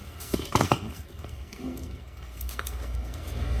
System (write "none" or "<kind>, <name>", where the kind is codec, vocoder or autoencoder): codec, SNAC